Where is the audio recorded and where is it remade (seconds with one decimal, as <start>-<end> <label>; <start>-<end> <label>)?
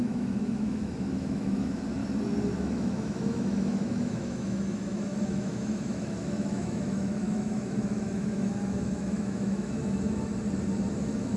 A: 0.0-2.0 remade; 2.0-2.6 recorded; 2.6-10.3 remade; 10.3-10.9 recorded; 10.9-11.4 remade